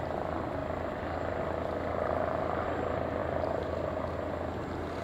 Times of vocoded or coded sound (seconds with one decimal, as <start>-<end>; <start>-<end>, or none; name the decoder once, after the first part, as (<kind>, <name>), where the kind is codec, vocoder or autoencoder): none

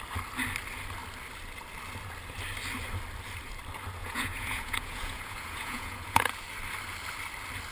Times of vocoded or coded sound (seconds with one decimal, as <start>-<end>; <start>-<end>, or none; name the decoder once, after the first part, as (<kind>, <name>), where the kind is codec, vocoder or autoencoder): 4.0-6.3 (vocoder, Vocos)

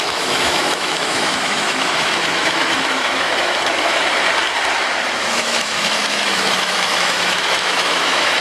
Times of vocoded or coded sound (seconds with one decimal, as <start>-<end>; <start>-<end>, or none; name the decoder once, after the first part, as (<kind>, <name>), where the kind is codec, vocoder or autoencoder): 0.0-4.0 (autoencoder, DAC-VAE); 5.1-8.4

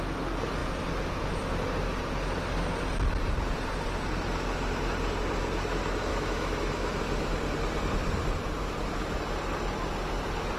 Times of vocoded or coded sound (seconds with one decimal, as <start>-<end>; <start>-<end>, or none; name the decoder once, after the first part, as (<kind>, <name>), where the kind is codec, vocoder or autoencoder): 6.1-7.0 (autoencoder, DAC-VAE)

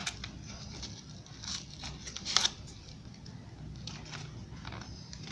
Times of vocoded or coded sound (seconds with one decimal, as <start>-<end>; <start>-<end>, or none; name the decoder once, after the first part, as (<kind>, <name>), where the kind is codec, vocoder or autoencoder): none

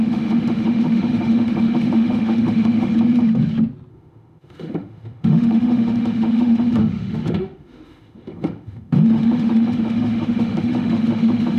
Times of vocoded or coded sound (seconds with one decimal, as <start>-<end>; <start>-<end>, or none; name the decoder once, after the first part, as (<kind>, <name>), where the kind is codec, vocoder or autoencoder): 0.0-2.9 (autoencoder, DAC-VAE); 3.9-11.6

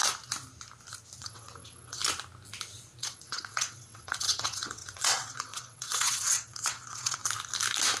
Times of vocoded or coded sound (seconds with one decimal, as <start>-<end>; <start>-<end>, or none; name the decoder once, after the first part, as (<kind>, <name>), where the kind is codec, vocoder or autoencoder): 1.2-2.0 (vocoder, WaveNeXt); 3.0-7.2